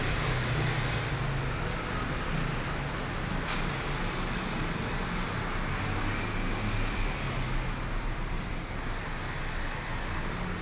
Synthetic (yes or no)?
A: no